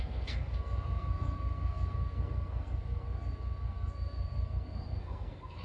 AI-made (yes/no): yes